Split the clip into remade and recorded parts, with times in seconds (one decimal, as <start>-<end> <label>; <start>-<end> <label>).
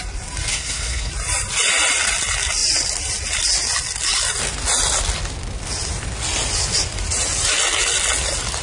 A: 0.0-0.5 recorded; 0.5-1.1 remade; 1.1-8.6 recorded